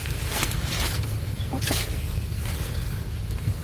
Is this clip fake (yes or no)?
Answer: yes